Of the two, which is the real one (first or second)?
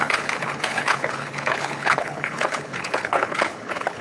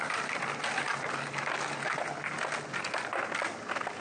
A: second